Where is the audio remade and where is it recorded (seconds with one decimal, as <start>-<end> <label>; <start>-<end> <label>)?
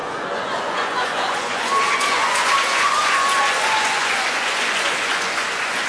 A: 0.0-5.9 remade